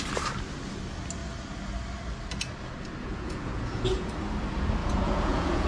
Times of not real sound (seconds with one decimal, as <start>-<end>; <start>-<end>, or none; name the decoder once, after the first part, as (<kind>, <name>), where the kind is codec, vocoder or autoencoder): 3.1-4.1 (vocoder, Vocos); 4.8-5.7